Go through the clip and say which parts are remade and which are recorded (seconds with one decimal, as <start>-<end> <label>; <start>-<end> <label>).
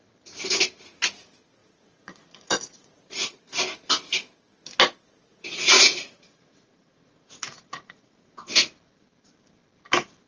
0.0-1.6 recorded; 1.6-3.4 remade; 3.4-5.3 recorded; 5.3-8.4 remade; 8.4-10.3 recorded